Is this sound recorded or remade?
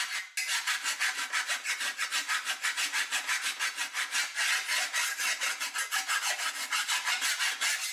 recorded